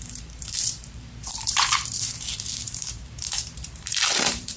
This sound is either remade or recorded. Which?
remade